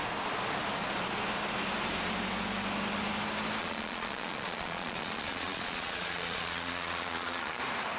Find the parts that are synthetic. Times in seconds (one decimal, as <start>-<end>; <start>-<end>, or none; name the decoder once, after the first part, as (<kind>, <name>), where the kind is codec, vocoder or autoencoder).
3.6-7.6 (vocoder, Vocos)